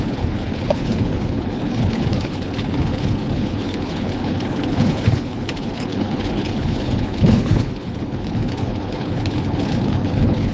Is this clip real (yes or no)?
no